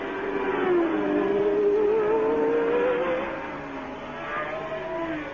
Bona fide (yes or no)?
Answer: yes